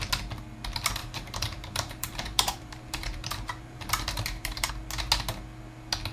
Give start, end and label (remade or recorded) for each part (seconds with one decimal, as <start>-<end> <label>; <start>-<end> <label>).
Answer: 0.0-1.0 recorded; 1.0-4.7 remade; 4.7-6.1 recorded